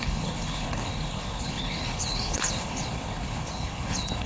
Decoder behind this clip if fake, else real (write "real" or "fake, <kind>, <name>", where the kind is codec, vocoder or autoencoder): fake, codec, HILCodec